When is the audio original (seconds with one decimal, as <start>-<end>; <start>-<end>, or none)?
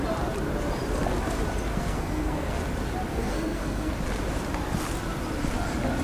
0.0-1.7; 2.6-3.1; 3.9-6.0